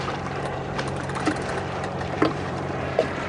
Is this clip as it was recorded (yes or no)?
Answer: no